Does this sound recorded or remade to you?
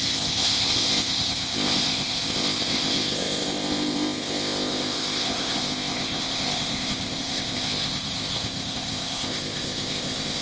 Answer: remade